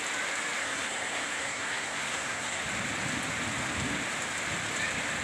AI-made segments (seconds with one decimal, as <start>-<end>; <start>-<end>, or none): 0.6-2.6